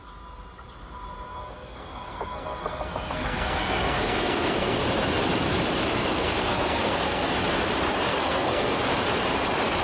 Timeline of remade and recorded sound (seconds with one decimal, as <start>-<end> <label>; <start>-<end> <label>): 0.0-1.3 recorded; 1.3-4.8 remade; 4.8-6.0 recorded; 6.0-7.3 remade; 7.3-8.1 recorded; 8.1-8.8 remade; 8.8-9.8 recorded